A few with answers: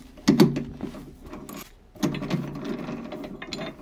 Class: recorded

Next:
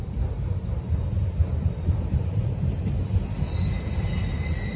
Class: remade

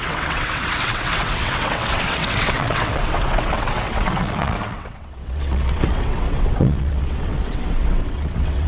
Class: remade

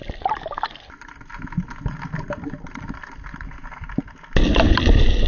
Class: recorded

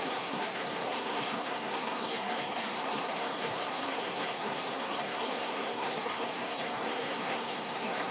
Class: remade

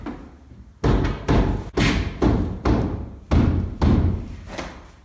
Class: recorded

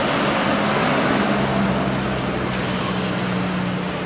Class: recorded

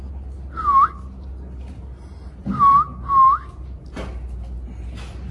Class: recorded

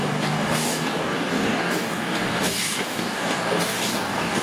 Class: remade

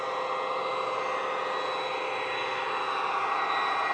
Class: recorded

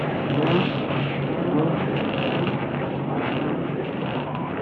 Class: remade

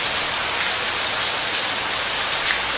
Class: recorded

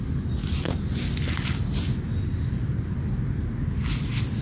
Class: recorded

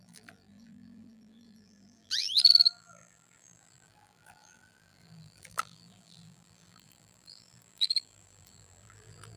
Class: remade